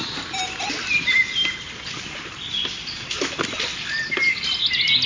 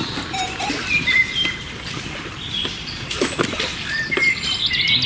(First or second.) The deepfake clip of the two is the second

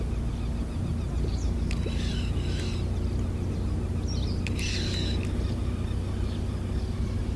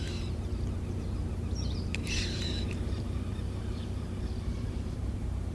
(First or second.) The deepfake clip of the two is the second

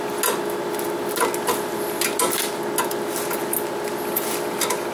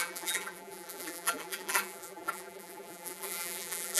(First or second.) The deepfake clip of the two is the second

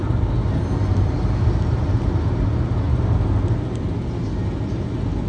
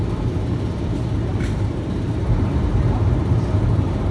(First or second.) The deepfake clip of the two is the second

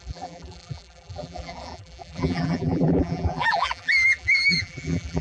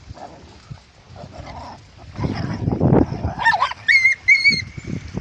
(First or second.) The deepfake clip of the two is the first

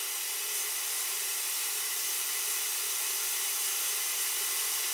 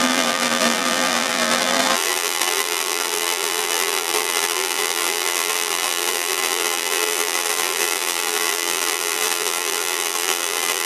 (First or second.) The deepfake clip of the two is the second